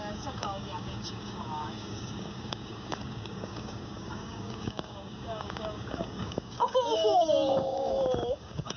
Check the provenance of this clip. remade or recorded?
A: remade